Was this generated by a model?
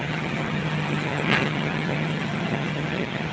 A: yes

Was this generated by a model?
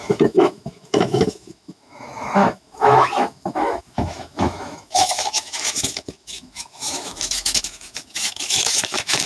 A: yes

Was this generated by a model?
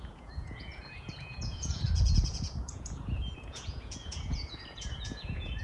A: yes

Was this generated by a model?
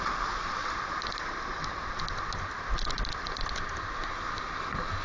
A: no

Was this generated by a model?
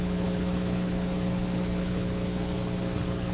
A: yes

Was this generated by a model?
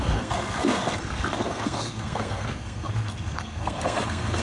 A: yes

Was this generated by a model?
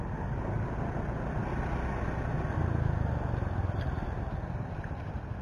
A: no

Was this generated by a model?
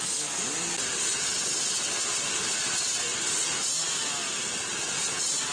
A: no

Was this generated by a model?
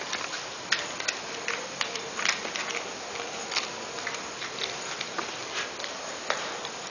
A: no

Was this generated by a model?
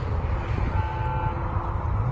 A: no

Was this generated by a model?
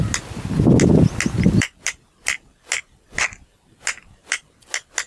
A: no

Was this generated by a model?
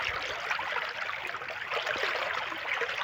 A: no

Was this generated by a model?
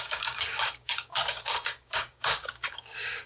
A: yes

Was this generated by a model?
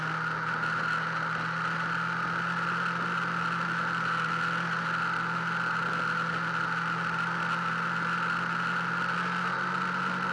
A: no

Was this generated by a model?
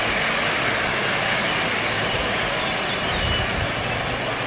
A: no